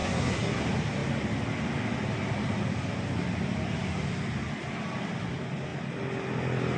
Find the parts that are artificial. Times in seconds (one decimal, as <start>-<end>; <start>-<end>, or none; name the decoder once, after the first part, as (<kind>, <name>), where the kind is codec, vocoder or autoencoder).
0.0-0.6 (codec, SNAC)

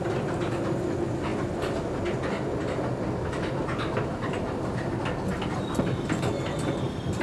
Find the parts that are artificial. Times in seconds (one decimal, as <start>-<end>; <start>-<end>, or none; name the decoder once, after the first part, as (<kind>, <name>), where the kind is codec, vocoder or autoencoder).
none

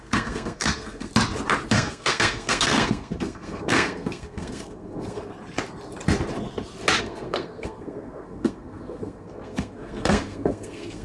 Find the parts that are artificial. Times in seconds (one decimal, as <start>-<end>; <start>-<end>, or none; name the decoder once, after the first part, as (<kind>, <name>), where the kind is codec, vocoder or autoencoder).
0.0-1.1 (codec, SNAC); 1.7-5.3; 7.0-11.0

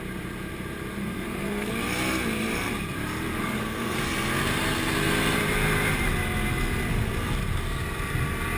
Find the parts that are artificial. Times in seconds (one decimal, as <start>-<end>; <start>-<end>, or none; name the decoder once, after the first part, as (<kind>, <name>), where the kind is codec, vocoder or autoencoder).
1.0-1.7 (codec, SNAC); 3.4-4.0

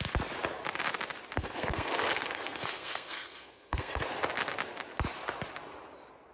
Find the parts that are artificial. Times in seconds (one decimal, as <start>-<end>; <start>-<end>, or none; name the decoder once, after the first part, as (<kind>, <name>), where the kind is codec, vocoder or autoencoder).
1.4-4.1 (codec, SNAC)